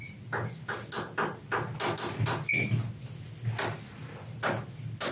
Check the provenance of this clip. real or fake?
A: real